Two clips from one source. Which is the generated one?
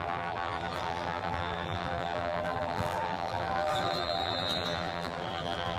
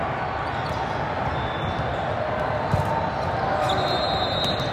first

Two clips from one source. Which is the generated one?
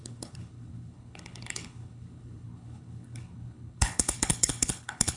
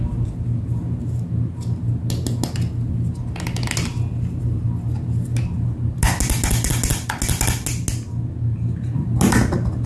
first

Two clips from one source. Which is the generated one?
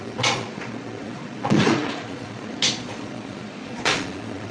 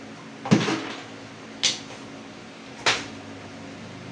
first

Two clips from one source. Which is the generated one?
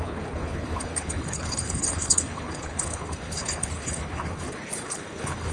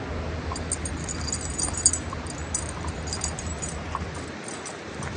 first